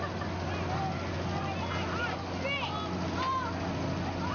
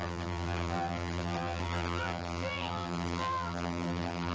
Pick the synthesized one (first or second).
second